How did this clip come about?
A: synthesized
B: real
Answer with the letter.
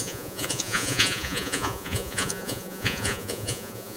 A